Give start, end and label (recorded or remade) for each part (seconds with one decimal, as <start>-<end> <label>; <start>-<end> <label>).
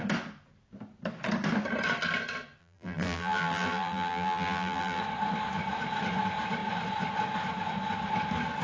0.0-2.6 recorded; 2.6-5.0 remade; 5.0-8.6 recorded